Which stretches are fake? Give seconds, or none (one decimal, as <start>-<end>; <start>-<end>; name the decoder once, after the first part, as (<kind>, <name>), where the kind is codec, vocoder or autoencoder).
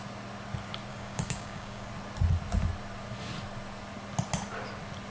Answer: 0.9-1.9 (codec, DAC)